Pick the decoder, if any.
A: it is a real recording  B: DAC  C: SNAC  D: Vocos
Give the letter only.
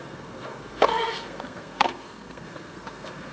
C